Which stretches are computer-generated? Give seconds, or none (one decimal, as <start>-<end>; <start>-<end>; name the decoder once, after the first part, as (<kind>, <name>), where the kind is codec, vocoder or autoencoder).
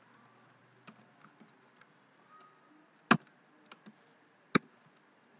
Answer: none